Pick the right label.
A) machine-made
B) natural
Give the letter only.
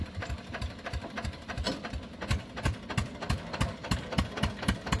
A